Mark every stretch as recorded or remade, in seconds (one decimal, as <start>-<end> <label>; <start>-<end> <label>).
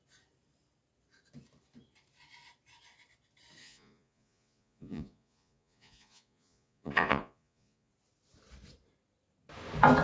0.0-3.6 recorded; 3.6-7.9 remade; 7.9-10.0 recorded